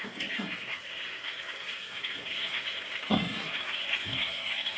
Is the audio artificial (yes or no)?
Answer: yes